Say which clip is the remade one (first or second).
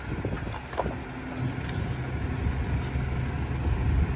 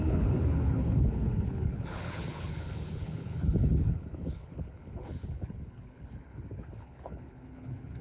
second